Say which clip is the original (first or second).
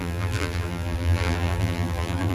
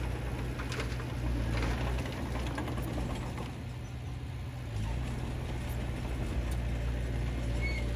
second